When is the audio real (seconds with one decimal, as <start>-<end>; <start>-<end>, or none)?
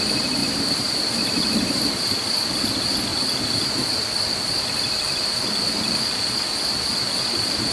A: 0.0-0.4; 2.0-3.1; 3.9-7.7